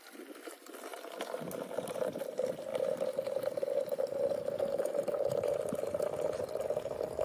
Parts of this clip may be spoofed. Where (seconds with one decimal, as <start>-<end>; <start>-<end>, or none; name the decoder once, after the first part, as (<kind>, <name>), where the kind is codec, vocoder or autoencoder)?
none